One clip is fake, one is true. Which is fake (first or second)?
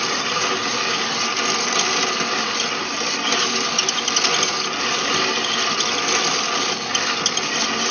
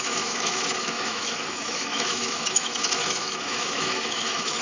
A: second